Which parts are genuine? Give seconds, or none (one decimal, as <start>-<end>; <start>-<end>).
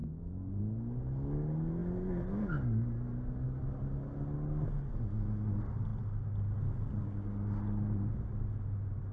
0.6-9.1